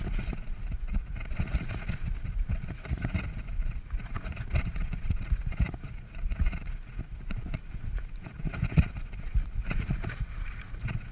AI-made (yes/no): yes